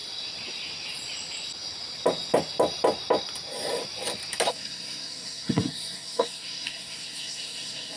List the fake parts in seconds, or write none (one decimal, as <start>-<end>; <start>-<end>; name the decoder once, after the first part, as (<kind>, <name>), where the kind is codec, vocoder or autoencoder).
4.5-8.0 (codec, SNAC)